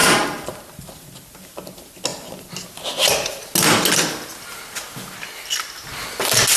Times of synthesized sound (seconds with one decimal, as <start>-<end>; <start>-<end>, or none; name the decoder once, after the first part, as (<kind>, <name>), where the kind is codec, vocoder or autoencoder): 0.0-0.9 (vocoder, BigVGAN v2)